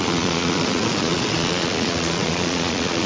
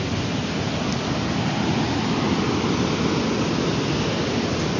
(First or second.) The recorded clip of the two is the second